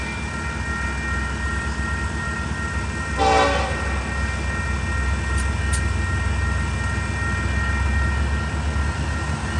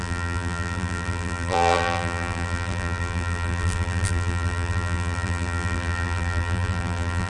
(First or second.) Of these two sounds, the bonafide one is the first